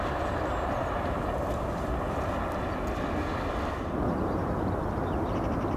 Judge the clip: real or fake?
real